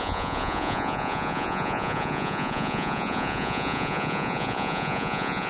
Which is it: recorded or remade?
remade